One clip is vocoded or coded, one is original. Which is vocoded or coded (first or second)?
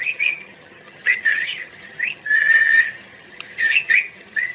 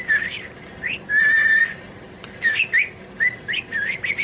first